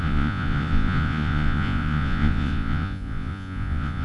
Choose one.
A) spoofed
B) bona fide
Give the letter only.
A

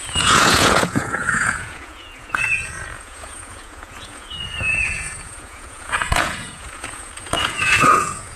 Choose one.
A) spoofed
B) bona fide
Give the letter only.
A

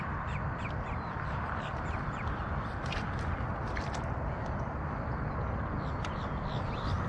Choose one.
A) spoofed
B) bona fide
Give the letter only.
B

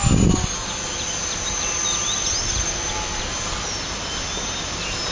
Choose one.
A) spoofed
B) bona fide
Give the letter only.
B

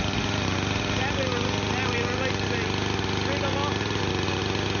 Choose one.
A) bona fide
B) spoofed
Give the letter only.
A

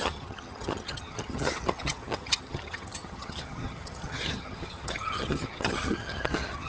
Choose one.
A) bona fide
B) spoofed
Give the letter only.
B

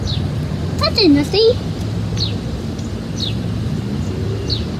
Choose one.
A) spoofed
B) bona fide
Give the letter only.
B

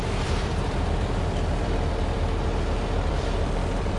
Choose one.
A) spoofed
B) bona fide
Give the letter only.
A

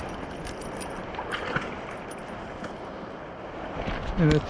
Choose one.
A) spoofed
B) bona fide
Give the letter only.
B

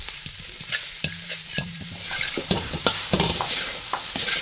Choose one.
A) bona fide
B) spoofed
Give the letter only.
B